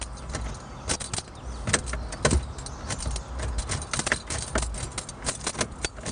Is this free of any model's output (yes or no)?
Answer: yes